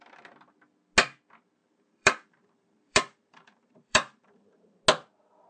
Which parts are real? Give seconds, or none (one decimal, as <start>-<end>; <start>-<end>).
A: 0.0-1.6; 4.8-5.5